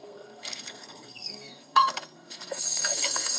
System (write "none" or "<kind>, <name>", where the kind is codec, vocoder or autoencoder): codec, SNAC